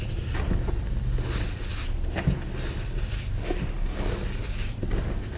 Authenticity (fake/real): real